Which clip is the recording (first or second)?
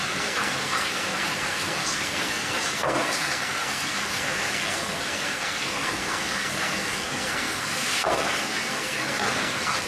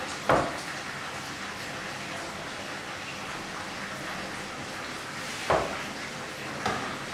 second